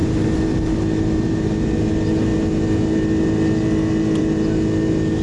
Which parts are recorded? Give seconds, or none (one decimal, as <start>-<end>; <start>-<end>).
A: 0.0-5.2